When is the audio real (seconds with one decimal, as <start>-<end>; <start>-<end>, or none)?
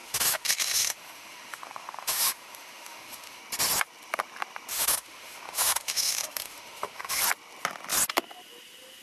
3.4-4.7; 7.2-9.0